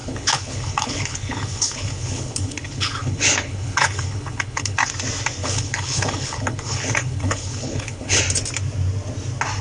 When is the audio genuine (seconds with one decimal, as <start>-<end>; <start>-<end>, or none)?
4.9-5.4; 8.2-9.6